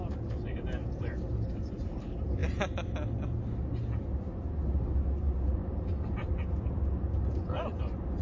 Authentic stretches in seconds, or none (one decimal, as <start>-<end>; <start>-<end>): 0.0-8.2